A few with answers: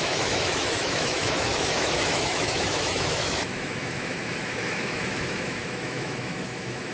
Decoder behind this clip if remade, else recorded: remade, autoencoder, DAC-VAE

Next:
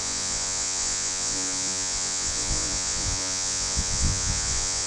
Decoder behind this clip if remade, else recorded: remade, vocoder, Vocos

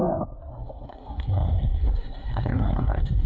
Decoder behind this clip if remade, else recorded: remade, codec, SNAC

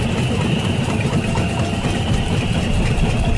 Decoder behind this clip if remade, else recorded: remade, vocoder, BigVGAN v2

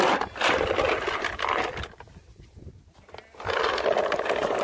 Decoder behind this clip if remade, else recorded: recorded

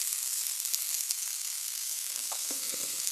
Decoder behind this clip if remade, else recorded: remade, codec, SNAC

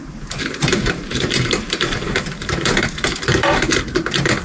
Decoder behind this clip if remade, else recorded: remade, vocoder, BigVGAN v2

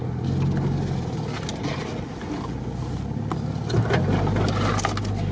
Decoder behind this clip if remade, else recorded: recorded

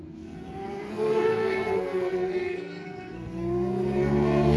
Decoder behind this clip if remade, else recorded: remade, codec, SNAC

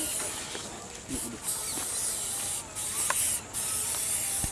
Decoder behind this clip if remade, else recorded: recorded